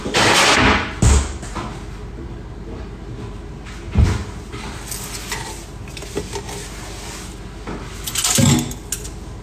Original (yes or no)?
yes